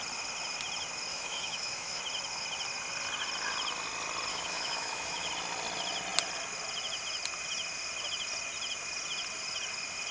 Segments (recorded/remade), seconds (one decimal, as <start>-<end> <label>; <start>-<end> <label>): 0.0-1.1 recorded; 1.1-2.0 remade; 2.0-4.3 recorded; 4.3-5.3 remade; 5.3-10.1 recorded